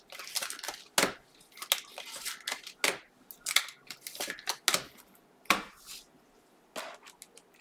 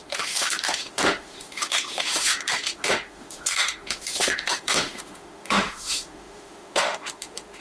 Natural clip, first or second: first